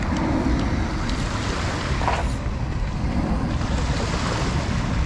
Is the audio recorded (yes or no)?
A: yes